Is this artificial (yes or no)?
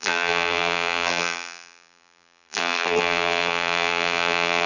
yes